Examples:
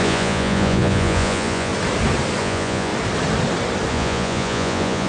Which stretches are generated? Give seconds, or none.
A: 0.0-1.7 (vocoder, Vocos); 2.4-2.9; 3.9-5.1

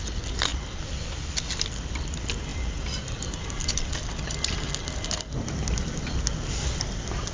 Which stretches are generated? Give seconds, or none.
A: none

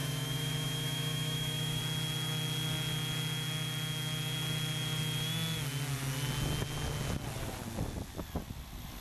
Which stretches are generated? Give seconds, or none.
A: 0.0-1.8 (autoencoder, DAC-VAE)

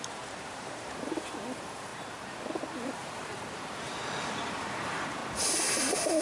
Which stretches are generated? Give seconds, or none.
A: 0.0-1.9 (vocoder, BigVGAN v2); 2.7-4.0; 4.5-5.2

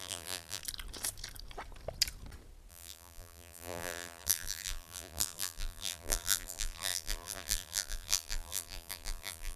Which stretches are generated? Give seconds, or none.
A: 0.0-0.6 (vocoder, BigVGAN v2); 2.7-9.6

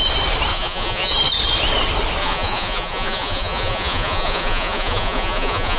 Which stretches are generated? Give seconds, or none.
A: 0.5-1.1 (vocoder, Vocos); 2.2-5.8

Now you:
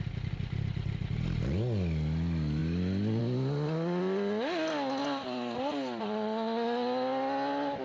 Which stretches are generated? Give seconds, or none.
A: none